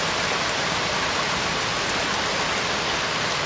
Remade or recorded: recorded